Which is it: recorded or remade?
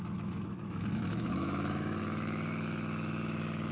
remade